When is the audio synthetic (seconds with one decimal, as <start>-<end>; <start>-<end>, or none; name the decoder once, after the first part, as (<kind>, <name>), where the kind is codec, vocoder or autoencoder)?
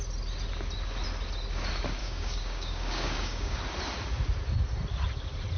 2.0-3.6 (codec, DAC)